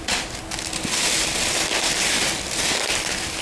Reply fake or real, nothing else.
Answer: real